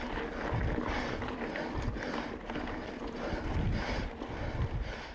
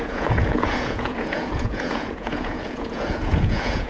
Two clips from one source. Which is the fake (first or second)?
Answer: second